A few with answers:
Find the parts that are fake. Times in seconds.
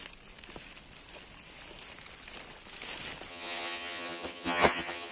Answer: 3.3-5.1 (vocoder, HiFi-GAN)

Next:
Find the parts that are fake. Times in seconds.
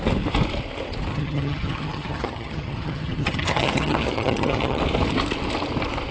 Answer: 1.1-4.8 (vocoder, HiFi-GAN)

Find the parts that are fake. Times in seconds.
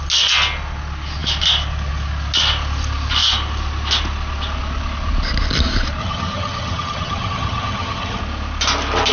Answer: 6.0-8.2 (vocoder, HiFi-GAN)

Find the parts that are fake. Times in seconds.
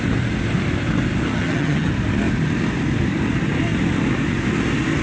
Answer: 1.3-1.9 (vocoder, HiFi-GAN)